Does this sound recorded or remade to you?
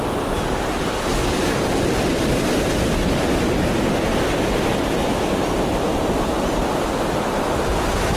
recorded